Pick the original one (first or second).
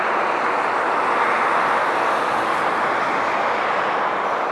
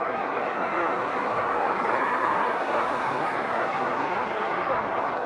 first